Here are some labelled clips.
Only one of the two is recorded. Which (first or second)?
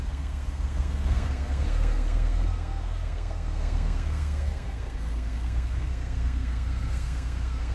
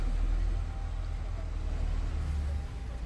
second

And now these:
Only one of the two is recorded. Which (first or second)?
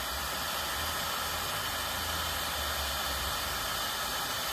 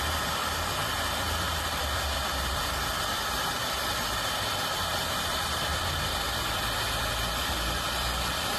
first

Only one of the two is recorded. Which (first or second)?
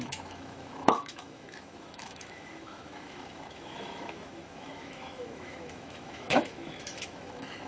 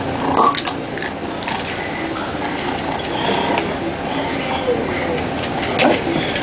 second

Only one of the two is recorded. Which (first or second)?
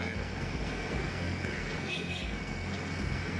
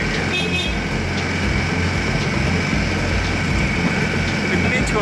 second